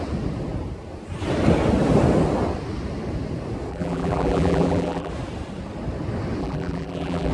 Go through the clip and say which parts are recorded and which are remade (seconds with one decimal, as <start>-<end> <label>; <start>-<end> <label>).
0.0-3.7 recorded; 3.7-5.1 remade; 5.1-6.4 recorded; 6.4-7.3 remade